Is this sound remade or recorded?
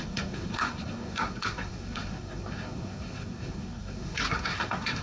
remade